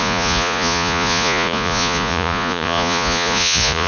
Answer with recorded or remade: remade